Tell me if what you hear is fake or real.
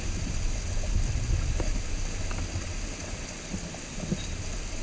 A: real